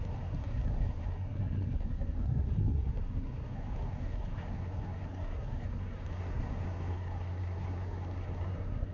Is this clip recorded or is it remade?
remade